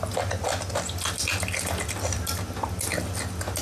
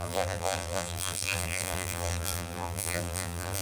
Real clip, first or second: first